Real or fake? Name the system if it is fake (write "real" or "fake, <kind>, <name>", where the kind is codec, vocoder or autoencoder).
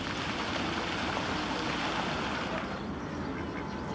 real